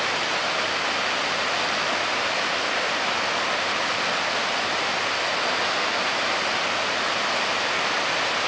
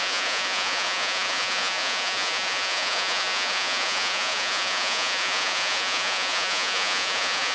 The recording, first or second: first